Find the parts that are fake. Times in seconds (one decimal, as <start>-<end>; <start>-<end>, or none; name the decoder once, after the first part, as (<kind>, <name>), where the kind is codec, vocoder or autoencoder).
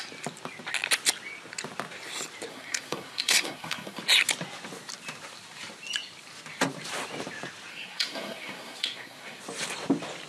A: 2.5-4.0 (codec, SNAC); 7.7-9.4